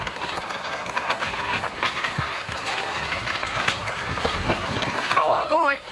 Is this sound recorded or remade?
remade